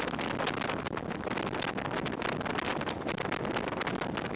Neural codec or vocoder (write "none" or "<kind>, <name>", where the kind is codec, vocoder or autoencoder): none